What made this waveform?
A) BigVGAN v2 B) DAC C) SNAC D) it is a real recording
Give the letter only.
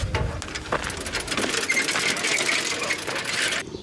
D